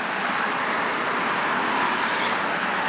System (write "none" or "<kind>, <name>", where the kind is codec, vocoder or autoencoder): none